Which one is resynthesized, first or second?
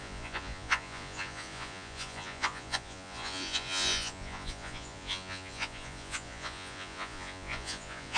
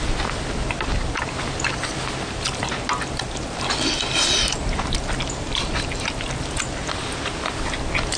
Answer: first